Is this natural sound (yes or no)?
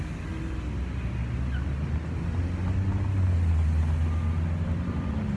yes